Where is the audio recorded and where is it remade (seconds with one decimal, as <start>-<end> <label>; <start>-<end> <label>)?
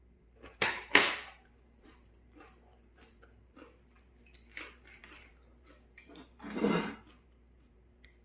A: 0.0-8.2 remade